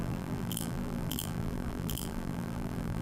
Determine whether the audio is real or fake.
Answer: fake